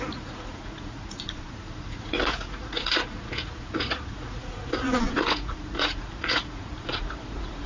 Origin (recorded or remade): remade